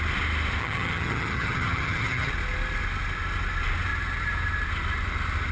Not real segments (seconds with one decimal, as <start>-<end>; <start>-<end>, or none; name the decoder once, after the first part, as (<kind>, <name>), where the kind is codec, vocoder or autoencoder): 0.6-2.3 (vocoder, HiFi-GAN)